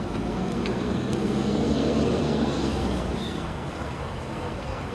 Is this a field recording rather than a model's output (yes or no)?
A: no